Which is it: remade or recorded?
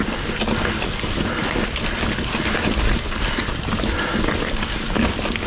recorded